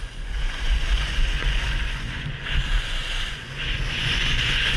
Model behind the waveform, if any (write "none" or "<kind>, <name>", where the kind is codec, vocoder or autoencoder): vocoder, Vocos